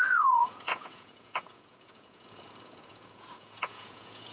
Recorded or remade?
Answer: remade